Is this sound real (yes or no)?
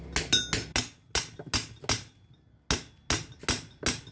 yes